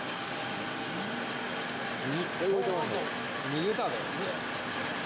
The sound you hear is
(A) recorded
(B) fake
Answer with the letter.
A